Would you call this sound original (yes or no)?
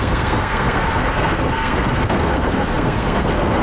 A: no